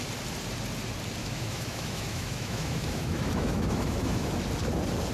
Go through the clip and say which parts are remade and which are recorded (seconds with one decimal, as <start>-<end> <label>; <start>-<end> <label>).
0.0-1.2 recorded; 1.2-4.3 remade; 4.3-5.1 recorded